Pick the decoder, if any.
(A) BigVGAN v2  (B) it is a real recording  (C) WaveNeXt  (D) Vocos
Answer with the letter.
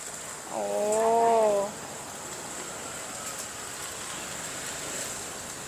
B